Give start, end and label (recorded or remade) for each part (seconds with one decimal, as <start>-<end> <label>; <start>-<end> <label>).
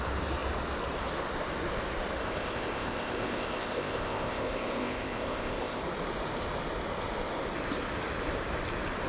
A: 0.0-2.2 recorded; 2.2-5.8 remade; 5.8-9.1 recorded